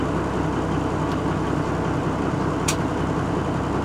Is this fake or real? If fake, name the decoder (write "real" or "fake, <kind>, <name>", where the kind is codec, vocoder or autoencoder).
real